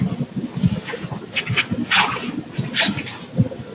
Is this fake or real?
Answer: real